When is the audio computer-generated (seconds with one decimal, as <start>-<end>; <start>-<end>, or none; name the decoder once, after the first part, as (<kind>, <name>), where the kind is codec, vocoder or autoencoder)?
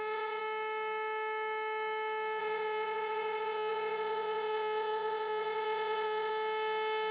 0.0-0.4 (vocoder, Vocos); 2.4-6.3